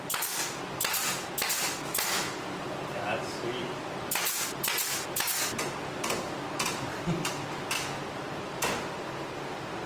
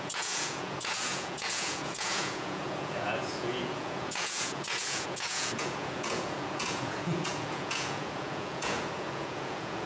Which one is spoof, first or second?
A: second